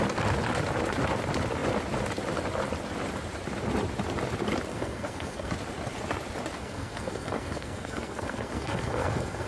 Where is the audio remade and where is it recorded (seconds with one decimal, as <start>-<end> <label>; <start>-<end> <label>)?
0.0-4.7 recorded; 4.7-5.5 remade; 5.5-6.6 recorded; 6.6-9.5 remade